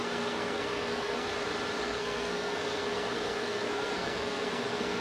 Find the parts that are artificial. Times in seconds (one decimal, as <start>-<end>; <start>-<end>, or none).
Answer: 0.0-1.3; 1.8-5.0